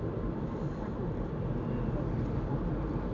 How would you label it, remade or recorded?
remade